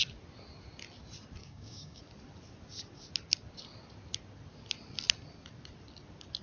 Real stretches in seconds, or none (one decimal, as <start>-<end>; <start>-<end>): 0.0-1.4; 2.0-6.4